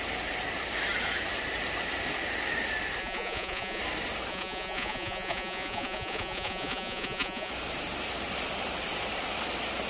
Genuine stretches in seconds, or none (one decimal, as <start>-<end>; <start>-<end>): 0.0-3.0; 3.8-4.3; 7.5-9.9